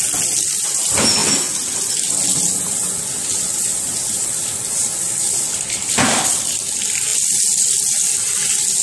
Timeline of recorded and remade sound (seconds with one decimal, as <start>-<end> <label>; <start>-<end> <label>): 0.0-8.8 recorded